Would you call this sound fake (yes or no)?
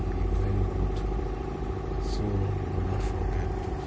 no